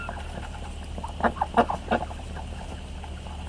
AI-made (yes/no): no